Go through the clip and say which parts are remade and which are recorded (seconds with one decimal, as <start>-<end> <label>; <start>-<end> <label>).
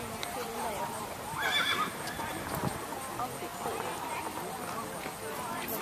0.0-0.4 recorded; 0.4-2.8 remade; 2.8-5.8 recorded